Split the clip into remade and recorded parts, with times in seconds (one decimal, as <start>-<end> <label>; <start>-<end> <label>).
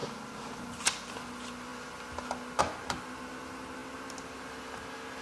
0.0-5.2 recorded